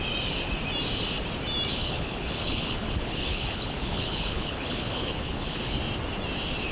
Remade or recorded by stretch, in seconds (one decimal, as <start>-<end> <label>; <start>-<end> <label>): 0.0-1.8 recorded; 1.8-5.8 remade; 5.8-6.7 recorded